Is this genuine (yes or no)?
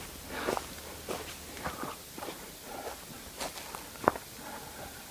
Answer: yes